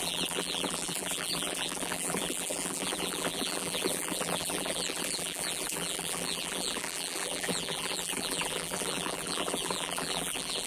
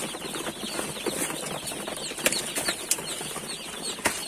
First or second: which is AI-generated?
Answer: first